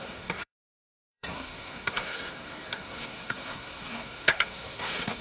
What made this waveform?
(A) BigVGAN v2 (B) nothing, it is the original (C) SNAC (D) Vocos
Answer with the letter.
C